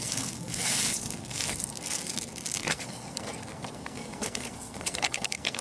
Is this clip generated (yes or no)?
yes